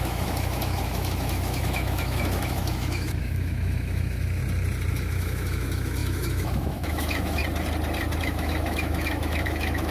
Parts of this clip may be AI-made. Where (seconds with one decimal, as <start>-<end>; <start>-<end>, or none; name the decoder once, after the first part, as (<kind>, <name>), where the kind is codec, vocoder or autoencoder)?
0.0-4.4 (autoencoder, DAC-VAE); 4.9-7.4; 8.2-9.9